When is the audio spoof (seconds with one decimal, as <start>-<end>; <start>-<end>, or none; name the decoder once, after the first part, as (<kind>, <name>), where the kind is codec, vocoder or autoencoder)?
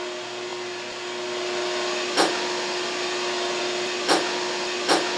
none